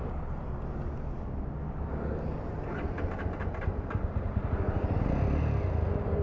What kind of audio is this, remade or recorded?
recorded